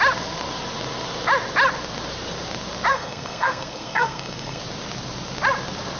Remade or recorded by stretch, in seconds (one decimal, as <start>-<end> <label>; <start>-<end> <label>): 0.0-2.9 recorded; 2.9-4.6 remade; 4.6-6.0 recorded